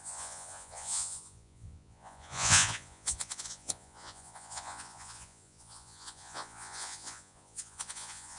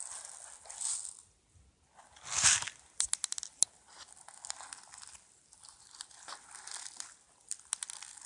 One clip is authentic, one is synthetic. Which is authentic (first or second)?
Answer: second